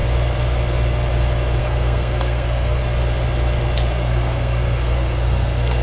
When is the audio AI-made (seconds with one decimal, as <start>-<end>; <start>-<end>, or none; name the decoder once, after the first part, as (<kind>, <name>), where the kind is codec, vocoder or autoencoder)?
1.6-2.8 (codec, SNAC); 3.9-5.8